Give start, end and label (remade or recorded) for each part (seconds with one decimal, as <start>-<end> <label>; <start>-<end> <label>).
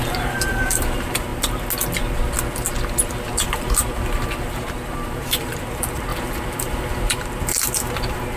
0.0-1.3 remade; 1.3-3.3 recorded; 3.3-8.4 remade